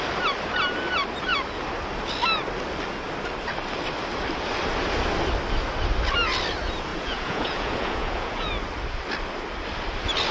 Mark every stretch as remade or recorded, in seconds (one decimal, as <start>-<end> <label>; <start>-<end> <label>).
0.0-6.9 recorded; 6.9-8.5 remade; 8.5-10.3 recorded